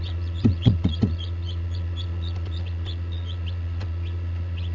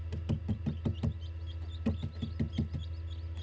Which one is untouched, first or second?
second